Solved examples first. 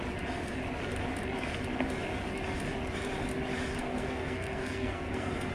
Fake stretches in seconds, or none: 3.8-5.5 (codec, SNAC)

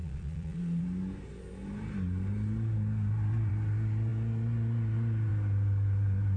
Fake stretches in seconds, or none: 0.0-0.8 (vocoder, Vocos)

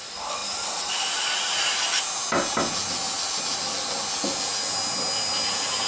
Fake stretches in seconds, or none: 0.4-2.0 (vocoder, BigVGAN v2)

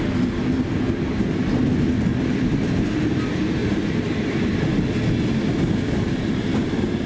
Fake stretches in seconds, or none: none

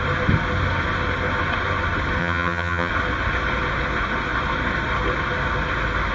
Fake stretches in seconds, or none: 2.2-2.9 (vocoder, HiFi-GAN)

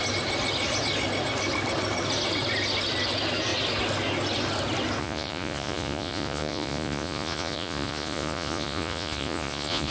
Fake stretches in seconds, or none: 5.0-9.9 (vocoder, Vocos)

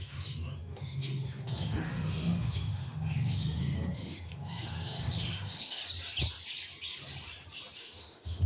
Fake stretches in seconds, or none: 0.0-5.8 (autoencoder, DAC-VAE); 7.8-8.5